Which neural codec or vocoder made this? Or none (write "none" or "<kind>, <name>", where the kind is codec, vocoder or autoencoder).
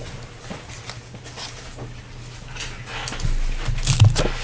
none